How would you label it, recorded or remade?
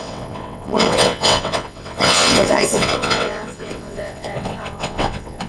remade